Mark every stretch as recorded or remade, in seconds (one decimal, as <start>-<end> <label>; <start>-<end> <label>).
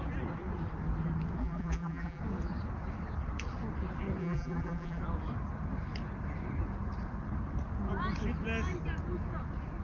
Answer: 0.0-1.4 recorded; 1.4-2.2 remade; 2.2-4.2 recorded; 4.2-5.0 remade; 5.0-9.8 recorded